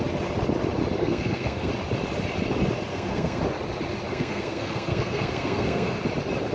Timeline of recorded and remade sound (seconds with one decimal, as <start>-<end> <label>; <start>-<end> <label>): 0.0-1.0 recorded; 1.0-1.7 remade; 1.7-2.9 recorded; 2.9-3.4 remade; 3.4-4.1 recorded; 4.1-6.0 remade; 6.0-6.5 recorded